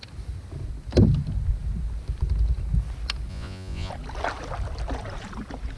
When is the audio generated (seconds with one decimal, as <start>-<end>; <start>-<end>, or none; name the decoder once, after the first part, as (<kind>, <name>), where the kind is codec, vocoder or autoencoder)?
3.3-3.9 (vocoder, Vocos)